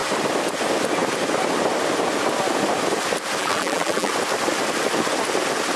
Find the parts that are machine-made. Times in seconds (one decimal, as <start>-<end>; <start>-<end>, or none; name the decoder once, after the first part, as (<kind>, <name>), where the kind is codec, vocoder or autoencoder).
3.4-4.1 (vocoder, BigVGAN v2)